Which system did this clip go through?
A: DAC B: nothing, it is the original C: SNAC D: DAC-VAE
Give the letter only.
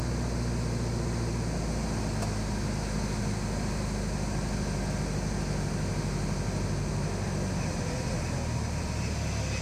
B